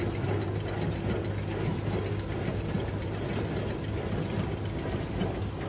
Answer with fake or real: real